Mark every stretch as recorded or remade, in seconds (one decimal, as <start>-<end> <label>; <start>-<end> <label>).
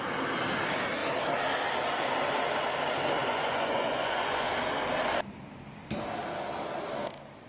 0.0-3.2 recorded; 3.2-4.5 remade; 4.5-7.5 recorded